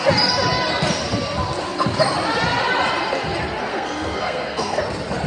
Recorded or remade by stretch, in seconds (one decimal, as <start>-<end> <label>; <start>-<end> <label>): 0.0-3.7 recorded; 3.7-4.8 remade; 4.8-5.3 recorded